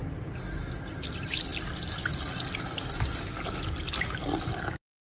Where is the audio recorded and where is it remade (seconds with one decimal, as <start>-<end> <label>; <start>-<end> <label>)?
0.0-5.0 recorded

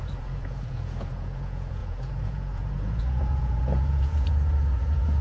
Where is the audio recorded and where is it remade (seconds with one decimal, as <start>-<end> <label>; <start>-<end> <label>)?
0.0-5.2 remade

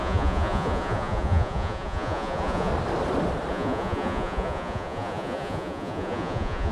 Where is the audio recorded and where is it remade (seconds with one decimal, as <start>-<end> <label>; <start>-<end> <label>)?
0.0-2.7 remade; 2.7-3.5 recorded; 3.5-6.7 remade